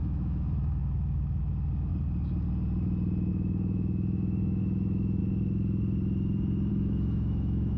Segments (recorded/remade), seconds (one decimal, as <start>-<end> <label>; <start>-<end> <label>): 0.0-1.9 remade; 1.9-3.3 recorded; 3.3-5.2 remade; 5.2-6.7 recorded; 6.7-7.8 remade

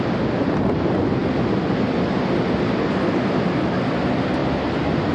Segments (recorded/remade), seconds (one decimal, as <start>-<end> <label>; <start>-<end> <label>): 0.0-5.1 recorded

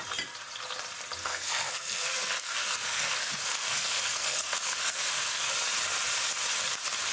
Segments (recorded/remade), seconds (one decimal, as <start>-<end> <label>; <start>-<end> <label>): 0.0-1.2 recorded; 1.2-5.5 remade; 5.5-7.1 recorded

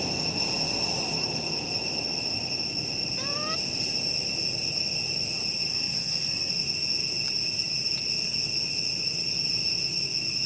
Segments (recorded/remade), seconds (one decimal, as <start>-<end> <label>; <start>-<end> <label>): 0.0-5.7 recorded; 5.7-6.5 remade; 6.5-10.5 recorded

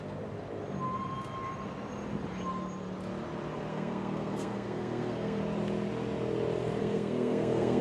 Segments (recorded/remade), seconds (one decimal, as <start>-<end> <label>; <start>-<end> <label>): 0.0-3.7 recorded; 3.7-5.4 remade; 5.4-6.8 recorded; 6.8-7.8 remade